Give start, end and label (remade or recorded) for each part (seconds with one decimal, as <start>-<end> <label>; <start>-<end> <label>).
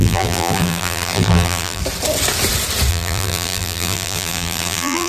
0.0-1.8 remade; 1.8-2.9 recorded; 2.9-5.1 remade